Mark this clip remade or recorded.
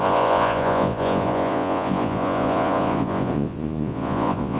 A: remade